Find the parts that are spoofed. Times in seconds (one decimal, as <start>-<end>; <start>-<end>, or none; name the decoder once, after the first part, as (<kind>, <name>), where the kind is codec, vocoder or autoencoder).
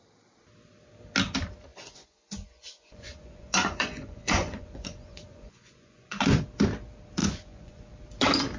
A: 1.7-6.4 (vocoder, Vocos); 7.2-7.9